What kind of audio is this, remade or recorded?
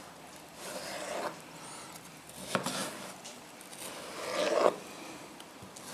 recorded